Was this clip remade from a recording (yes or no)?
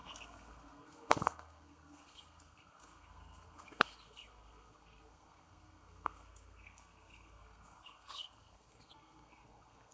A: yes